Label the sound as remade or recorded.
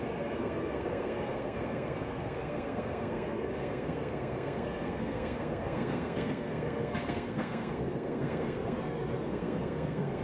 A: remade